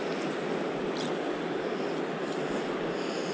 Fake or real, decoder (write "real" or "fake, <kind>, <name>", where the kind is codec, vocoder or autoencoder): real